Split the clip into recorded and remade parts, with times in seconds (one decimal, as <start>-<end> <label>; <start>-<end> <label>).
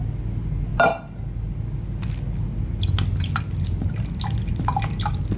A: 0.0-5.4 recorded